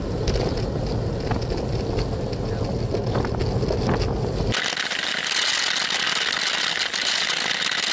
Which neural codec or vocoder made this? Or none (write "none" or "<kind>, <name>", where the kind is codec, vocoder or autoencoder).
none